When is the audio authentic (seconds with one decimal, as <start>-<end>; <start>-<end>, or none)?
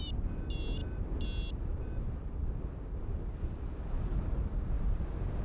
0.0-5.4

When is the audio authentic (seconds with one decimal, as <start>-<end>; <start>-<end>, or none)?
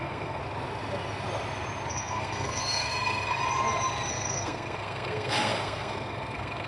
0.4-1.9; 3.4-4.1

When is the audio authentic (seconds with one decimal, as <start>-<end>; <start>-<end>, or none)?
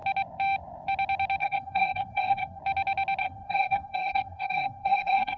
0.0-1.4; 2.6-3.2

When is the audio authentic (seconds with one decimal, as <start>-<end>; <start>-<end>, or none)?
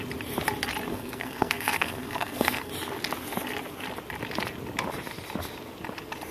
0.0-0.9; 2.7-6.3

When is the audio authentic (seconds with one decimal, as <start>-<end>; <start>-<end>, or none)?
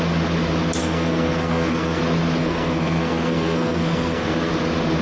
0.0-0.8; 2.0-2.4; 4.5-5.0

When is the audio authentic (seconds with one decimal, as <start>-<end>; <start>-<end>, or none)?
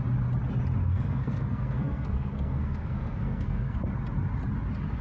0.0-0.8; 3.8-5.0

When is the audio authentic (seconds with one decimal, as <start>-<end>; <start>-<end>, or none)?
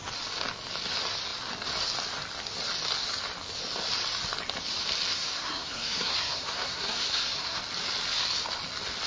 0.0-5.1; 7.6-9.1